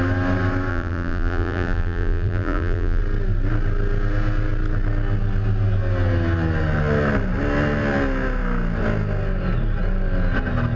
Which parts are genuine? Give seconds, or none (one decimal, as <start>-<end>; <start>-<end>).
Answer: 0.0-0.7; 3.0-10.8